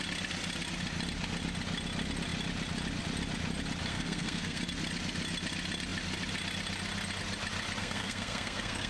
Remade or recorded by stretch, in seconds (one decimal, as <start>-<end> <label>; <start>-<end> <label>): 0.0-3.9 recorded; 3.9-4.6 remade; 4.6-7.8 recorded; 7.8-8.9 remade